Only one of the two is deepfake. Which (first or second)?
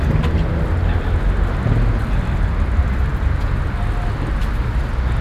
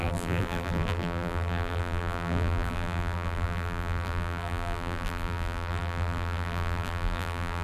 second